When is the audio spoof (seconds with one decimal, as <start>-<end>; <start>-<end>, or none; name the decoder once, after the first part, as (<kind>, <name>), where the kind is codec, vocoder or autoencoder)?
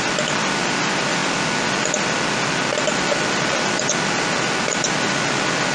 none